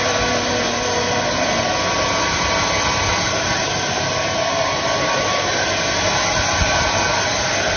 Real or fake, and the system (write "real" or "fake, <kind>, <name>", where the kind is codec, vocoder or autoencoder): real